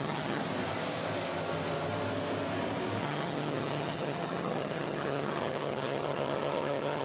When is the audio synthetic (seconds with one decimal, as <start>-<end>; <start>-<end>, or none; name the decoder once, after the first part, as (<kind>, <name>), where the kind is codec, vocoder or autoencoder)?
0.0-0.4 (vocoder, HiFi-GAN); 3.0-7.0